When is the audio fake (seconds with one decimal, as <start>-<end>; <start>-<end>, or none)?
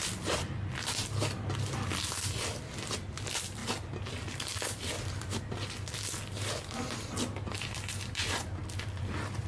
none